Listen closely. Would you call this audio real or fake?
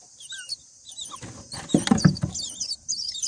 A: real